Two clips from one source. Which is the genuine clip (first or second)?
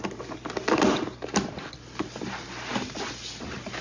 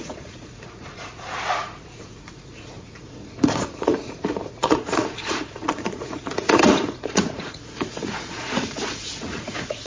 first